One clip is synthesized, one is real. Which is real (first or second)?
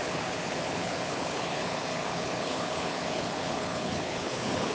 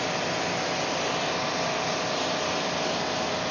second